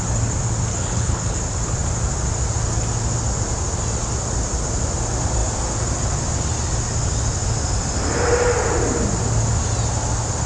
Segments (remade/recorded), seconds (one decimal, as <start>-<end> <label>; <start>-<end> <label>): 0.0-0.7 recorded; 0.7-1.4 remade; 1.4-10.5 recorded